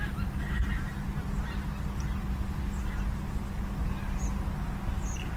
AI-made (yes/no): no